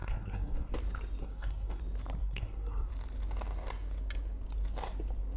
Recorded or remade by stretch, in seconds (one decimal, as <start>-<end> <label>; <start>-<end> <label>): 0.0-0.7 remade; 0.7-1.2 recorded; 1.2-1.8 remade; 1.8-2.2 recorded; 2.2-2.9 remade; 2.9-5.4 recorded